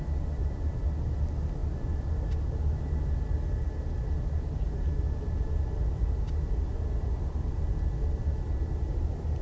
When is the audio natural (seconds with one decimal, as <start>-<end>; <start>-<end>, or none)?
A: 0.0-9.4

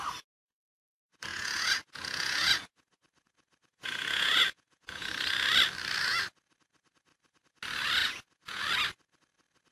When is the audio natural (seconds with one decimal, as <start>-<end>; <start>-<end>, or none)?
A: 0.0-1.3; 2.9-3.7; 5.1-8.0; 8.6-9.7

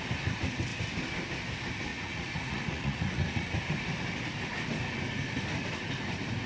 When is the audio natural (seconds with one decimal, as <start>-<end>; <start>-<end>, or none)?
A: 0.0-1.9; 3.6-6.5

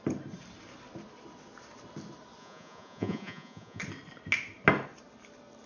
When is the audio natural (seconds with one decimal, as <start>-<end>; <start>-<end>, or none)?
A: 0.0-2.4; 3.8-5.7

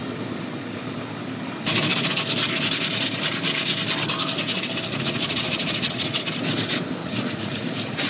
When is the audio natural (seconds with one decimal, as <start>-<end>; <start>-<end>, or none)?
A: 0.0-4.9; 6.2-7.0

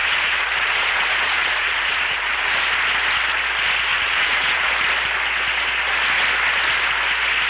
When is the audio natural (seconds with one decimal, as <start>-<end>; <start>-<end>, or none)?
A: 2.6-3.9; 4.7-7.5

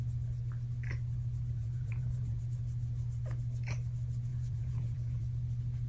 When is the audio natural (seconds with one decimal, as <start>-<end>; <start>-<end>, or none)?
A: 0.0-1.6; 2.4-4.3; 5.2-5.9

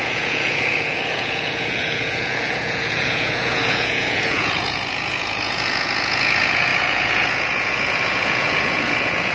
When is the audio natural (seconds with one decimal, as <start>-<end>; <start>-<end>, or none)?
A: none